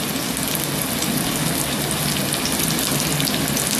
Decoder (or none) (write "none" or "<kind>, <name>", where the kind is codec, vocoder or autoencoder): none